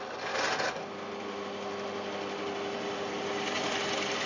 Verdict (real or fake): real